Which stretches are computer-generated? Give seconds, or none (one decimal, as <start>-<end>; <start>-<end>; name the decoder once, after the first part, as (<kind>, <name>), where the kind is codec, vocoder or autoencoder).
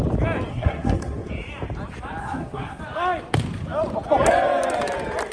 0.5-1.3 (codec, SNAC); 2.2-2.8